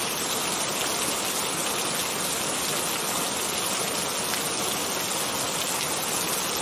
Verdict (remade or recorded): recorded